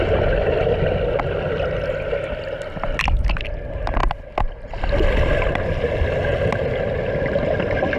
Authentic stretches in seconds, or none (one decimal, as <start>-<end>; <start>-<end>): 0.0-8.0